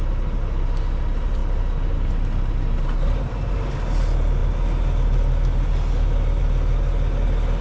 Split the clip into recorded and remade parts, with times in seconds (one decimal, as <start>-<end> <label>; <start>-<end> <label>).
0.0-7.6 recorded